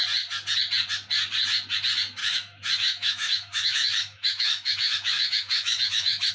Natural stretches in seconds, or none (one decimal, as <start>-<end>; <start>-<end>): 0.0-2.2